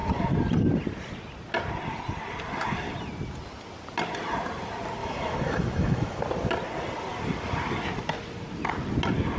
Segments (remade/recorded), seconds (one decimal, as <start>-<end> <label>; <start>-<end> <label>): 0.0-5.0 recorded; 5.0-6.2 remade; 6.2-9.4 recorded